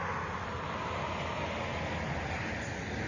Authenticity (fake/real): real